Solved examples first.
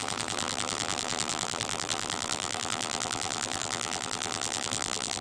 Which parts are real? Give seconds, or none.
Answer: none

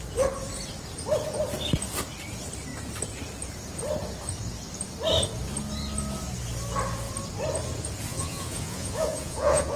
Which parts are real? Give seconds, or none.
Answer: 0.0-8.1

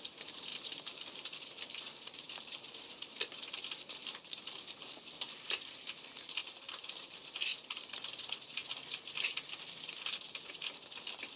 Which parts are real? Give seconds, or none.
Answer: 0.0-0.5; 5.5-6.4; 6.9-7.5; 8.2-11.4

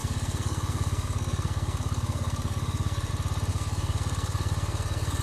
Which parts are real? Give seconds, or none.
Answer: 3.1-3.5

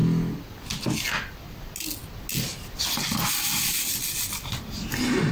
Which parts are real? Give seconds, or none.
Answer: 0.0-5.3

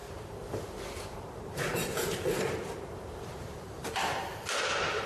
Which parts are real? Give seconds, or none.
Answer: 4.1-5.1

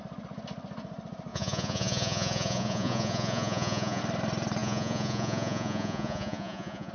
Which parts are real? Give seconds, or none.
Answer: 0.0-1.3; 4.0-4.6